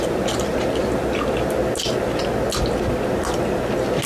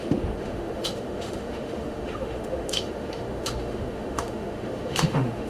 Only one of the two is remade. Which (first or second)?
second